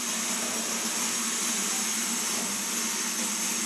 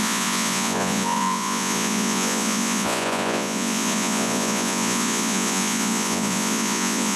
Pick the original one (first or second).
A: first